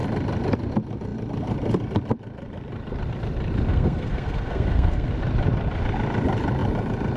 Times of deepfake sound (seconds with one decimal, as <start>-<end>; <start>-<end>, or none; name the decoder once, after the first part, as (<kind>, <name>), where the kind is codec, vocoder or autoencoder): 3.7-5.1 (codec, SNAC)